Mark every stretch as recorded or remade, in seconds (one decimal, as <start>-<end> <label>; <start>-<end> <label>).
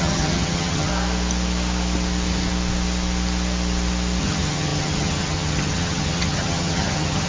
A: 0.0-0.9 remade; 0.9-4.2 recorded; 4.2-7.3 remade